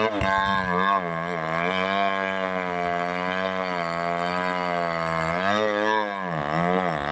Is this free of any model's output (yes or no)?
yes